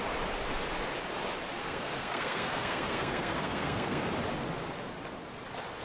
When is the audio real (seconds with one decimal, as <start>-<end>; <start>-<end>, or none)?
0.0-1.6; 4.1-5.8